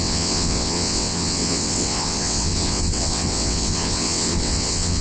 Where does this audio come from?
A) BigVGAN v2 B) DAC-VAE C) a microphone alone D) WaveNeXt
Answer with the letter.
D